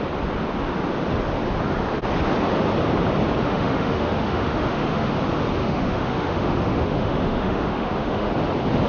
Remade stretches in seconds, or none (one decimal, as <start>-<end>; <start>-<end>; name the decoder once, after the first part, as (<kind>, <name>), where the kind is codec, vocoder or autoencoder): 3.5-5.1 (autoencoder, DAC-VAE); 5.6-8.3